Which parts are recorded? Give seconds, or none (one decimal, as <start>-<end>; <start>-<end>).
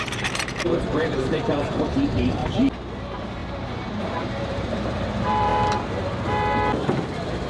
2.4-3.0; 3.4-4.2; 5.5-7.5